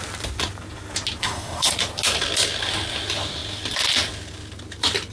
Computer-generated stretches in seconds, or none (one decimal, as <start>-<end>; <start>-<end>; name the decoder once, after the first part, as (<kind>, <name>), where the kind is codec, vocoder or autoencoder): 1.2-1.7 (codec, SNAC)